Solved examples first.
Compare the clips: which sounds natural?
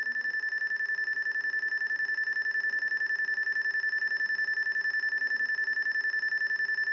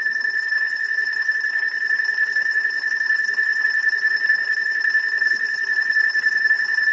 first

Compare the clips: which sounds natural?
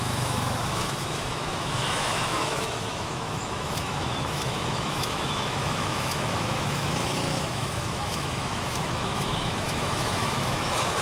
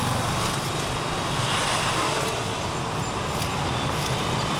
second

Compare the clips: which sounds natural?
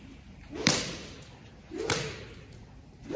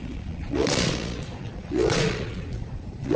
first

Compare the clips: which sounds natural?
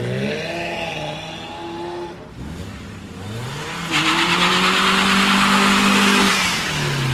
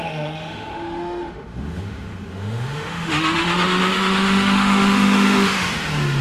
first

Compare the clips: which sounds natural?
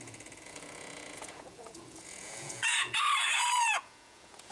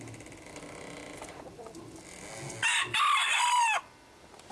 second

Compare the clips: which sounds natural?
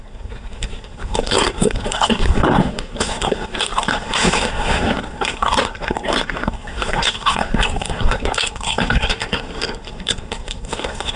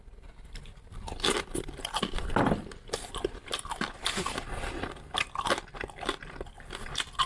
second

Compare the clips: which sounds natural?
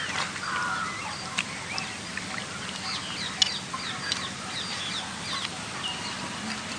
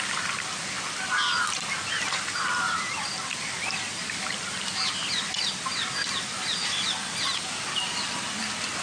first